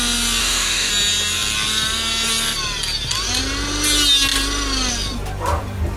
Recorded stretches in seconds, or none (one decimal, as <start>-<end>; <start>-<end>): 0.0-0.4; 0.9-6.0